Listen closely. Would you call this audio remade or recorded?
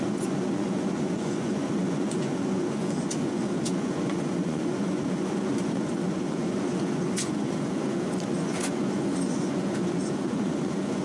remade